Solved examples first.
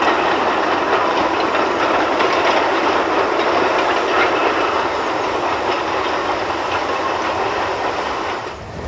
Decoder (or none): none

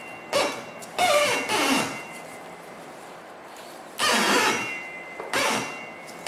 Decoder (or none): vocoder, BigVGAN v2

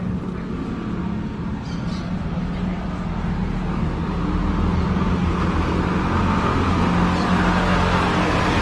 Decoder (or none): none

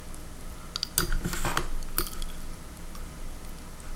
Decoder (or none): none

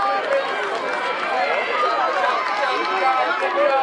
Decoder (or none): none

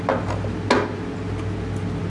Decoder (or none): none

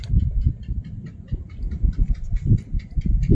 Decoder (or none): vocoder, BigVGAN v2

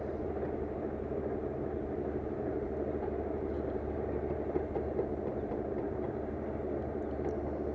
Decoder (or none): vocoder, BigVGAN v2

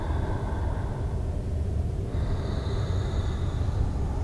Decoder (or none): none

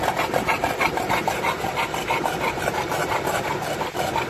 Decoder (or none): vocoder, BigVGAN v2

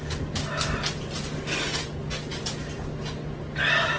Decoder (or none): none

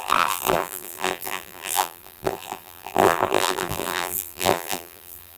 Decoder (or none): vocoder, BigVGAN v2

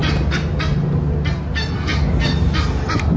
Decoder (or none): none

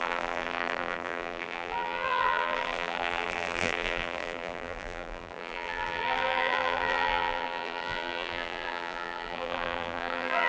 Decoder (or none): vocoder, BigVGAN v2